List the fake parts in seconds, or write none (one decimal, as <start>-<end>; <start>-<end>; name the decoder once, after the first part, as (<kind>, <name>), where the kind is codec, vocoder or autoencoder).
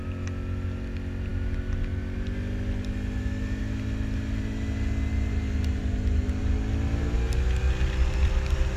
none